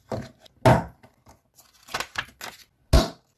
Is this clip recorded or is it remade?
recorded